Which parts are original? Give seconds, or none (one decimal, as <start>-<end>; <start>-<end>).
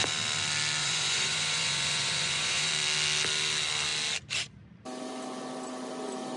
0.0-0.8; 2.7-6.4